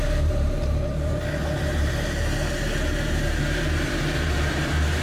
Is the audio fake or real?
fake